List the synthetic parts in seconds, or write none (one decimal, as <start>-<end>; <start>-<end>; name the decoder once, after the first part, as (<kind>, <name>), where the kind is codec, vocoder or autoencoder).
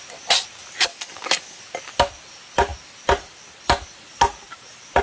0.9-1.6 (codec, DAC)